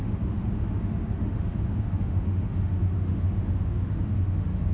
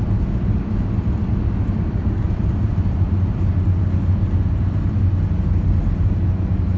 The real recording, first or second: second